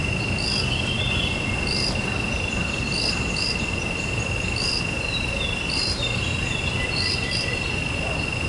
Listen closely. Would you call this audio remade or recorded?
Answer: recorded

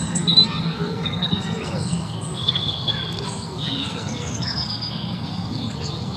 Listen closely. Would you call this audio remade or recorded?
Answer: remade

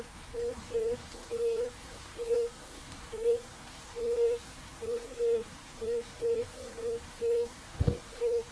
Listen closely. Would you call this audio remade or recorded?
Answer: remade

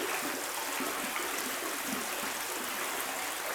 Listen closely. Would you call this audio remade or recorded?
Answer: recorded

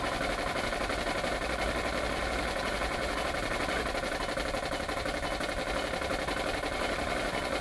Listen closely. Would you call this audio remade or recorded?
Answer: recorded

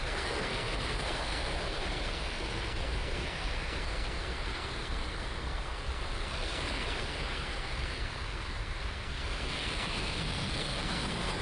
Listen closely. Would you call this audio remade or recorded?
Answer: remade